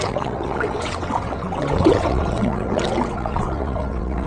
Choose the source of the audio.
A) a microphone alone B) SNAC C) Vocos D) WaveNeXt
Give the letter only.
D